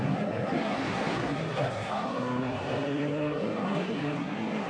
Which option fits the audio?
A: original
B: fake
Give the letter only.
B